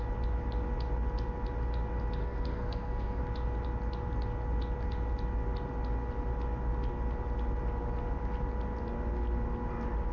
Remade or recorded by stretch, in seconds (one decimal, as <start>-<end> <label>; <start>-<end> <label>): 0.0-2.2 recorded; 2.2-3.2 remade; 3.2-10.1 recorded